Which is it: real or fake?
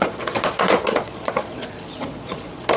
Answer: fake